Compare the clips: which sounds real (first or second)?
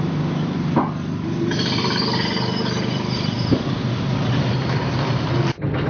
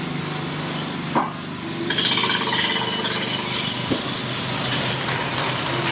second